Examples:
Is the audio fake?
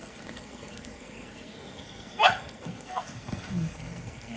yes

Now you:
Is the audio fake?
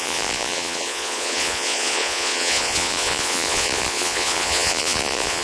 yes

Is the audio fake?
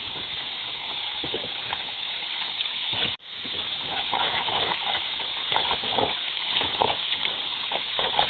yes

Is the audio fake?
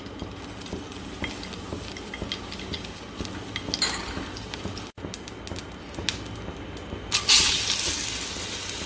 no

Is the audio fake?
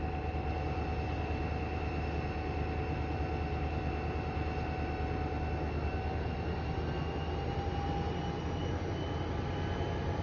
no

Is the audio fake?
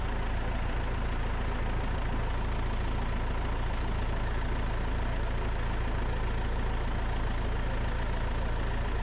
no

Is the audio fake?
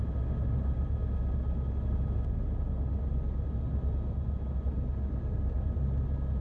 no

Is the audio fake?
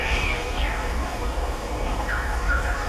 yes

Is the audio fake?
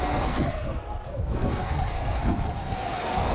yes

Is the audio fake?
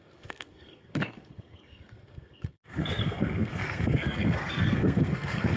yes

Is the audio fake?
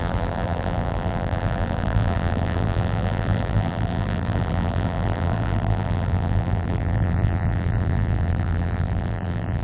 yes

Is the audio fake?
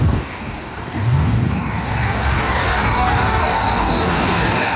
yes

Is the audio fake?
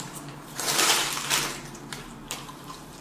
yes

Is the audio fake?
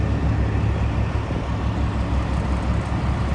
no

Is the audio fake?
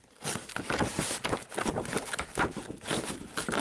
no